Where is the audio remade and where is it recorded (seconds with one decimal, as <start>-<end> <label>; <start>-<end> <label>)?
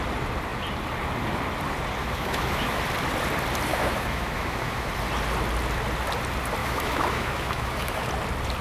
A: 0.0-2.0 recorded; 2.0-2.8 remade; 2.8-3.7 recorded; 3.7-4.9 remade; 4.9-6.6 recorded; 6.6-8.0 remade; 8.0-8.6 recorded